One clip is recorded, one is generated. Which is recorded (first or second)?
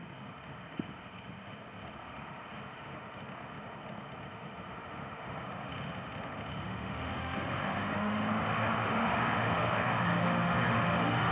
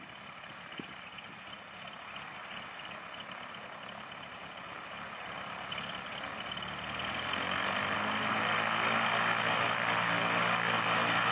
second